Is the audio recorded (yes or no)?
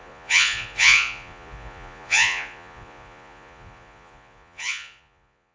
no